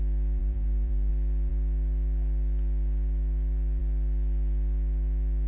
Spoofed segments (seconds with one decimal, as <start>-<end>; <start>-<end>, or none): 0.4-1.1